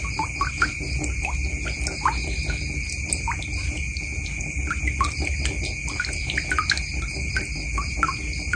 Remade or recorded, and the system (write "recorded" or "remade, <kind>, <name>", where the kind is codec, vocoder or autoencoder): recorded